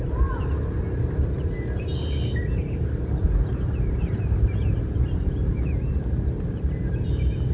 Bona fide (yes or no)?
yes